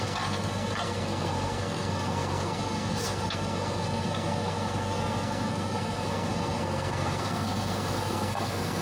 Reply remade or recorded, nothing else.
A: remade